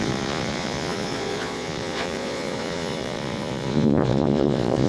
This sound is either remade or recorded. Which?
remade